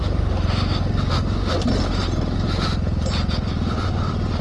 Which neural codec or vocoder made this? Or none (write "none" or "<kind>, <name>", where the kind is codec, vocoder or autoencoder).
none